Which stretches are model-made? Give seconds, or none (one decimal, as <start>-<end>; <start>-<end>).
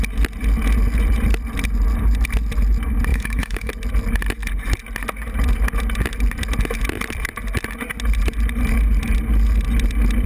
3.1-3.7